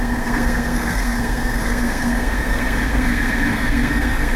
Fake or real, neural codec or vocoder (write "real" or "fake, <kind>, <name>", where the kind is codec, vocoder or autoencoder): fake, codec, SNAC